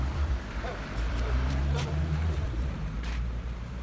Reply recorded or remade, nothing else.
remade